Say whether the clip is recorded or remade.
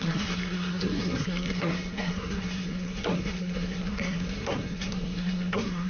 remade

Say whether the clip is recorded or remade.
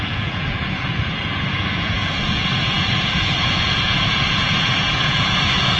remade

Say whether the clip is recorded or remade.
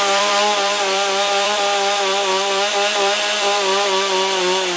remade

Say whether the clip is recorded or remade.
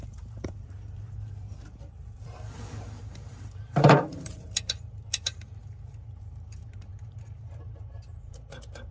remade